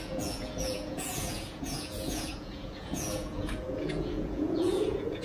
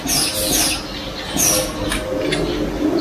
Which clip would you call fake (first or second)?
first